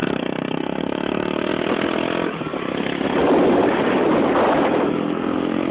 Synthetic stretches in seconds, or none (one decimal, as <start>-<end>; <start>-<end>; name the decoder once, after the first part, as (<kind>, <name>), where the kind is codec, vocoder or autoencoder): 0.0-1.5 (codec, DAC); 4.9-5.7